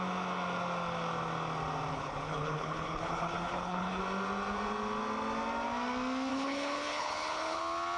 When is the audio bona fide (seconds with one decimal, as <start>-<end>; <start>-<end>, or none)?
0.0-1.9; 4.0-6.3; 7.6-8.0